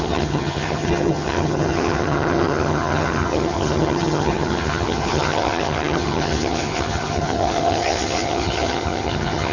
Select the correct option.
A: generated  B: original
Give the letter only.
A